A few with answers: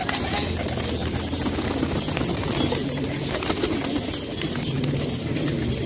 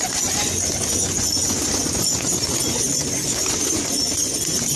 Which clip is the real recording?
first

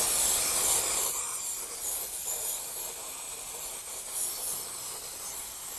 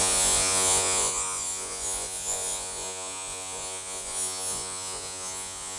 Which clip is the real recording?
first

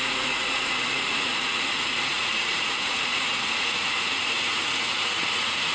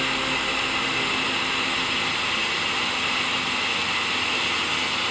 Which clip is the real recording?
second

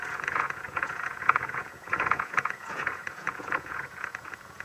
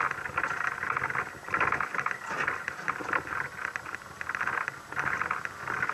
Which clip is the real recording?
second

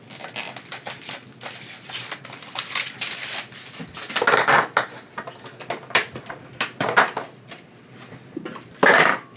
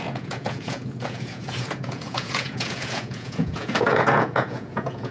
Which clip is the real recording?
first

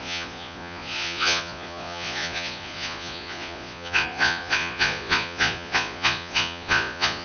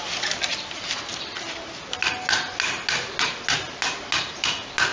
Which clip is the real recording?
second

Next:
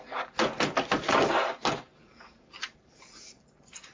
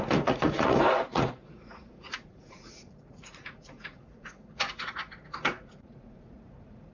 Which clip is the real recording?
first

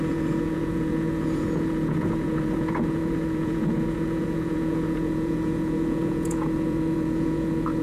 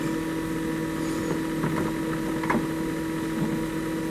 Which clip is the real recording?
second